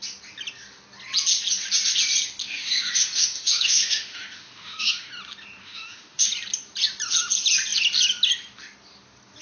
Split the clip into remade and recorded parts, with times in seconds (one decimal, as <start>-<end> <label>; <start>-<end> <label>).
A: 0.0-2.4 recorded; 2.4-5.1 remade; 5.1-5.6 recorded; 5.6-6.3 remade; 6.3-9.4 recorded